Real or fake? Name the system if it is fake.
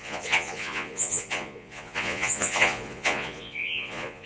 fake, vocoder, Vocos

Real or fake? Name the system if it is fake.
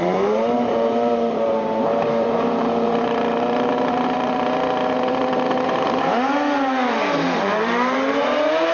fake, vocoder, BigVGAN v2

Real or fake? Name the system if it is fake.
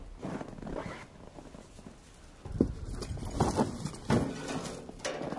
real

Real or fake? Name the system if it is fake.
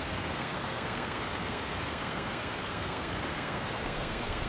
fake, codec, SNAC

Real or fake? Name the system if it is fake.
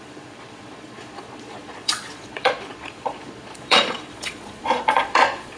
fake, vocoder, Vocos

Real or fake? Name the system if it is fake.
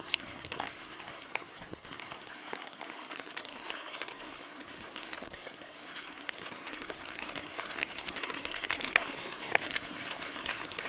fake, codec, SNAC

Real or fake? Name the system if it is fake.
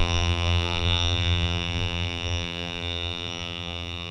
fake, vocoder, BigVGAN v2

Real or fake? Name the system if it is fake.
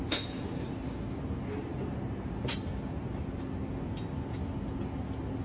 real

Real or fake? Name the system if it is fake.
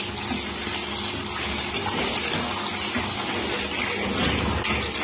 real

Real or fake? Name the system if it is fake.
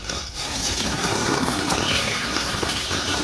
fake, codec, SNAC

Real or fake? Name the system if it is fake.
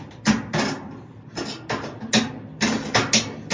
real